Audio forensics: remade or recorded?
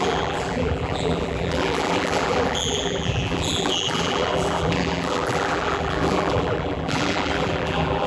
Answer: remade